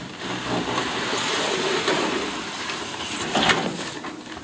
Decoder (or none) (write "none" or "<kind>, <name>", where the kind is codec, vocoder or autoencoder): vocoder, BigVGAN v2